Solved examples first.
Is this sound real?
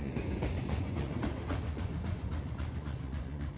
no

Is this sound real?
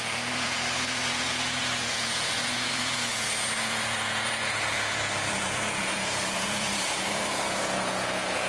no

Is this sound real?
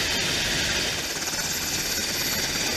yes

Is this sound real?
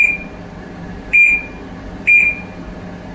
yes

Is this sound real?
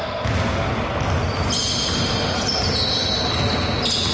yes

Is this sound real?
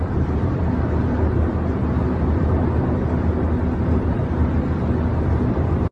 yes